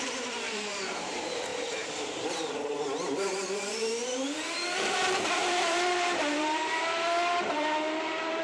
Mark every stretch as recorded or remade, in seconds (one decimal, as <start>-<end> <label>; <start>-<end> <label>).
0.0-8.4 remade